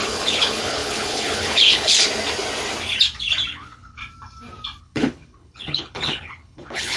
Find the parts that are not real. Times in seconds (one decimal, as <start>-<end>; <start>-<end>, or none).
0.0-2.0; 3.5-4.0; 4.8-7.0